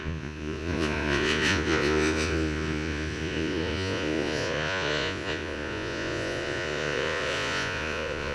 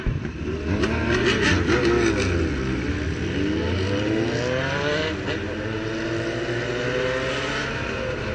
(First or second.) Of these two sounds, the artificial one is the first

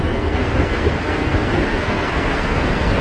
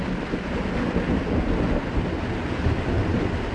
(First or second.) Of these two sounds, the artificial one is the first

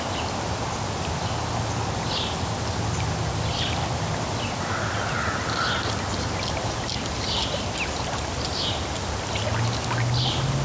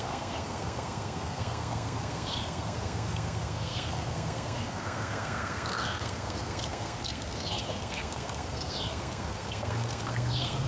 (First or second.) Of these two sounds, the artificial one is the second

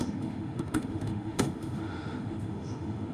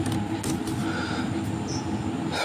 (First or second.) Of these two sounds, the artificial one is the first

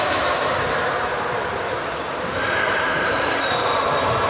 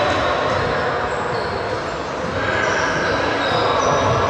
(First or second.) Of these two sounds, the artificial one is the first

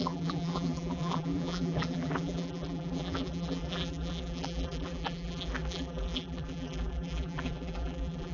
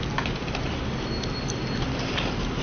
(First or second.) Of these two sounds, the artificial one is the first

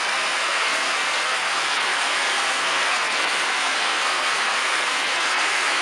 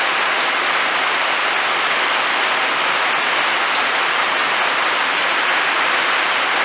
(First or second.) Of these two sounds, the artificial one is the first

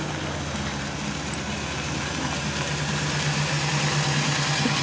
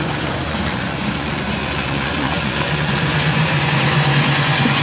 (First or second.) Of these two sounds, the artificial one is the second